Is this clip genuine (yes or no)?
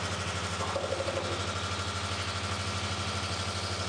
yes